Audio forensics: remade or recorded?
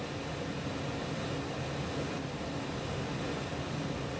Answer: recorded